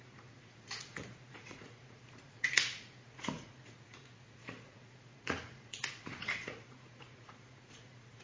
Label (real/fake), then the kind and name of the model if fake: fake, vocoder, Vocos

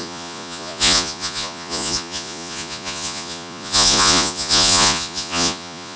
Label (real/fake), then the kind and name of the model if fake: fake, vocoder, Vocos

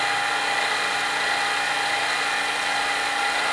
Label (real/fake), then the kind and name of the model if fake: real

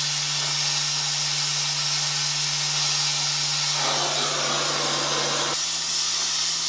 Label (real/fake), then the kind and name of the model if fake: real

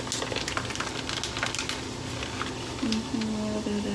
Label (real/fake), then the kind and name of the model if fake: real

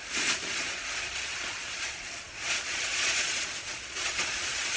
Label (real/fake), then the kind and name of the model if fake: fake, vocoder, Vocos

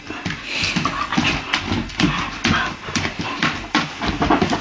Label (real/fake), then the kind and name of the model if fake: real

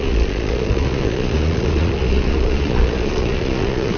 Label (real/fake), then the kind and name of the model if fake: fake, vocoder, Vocos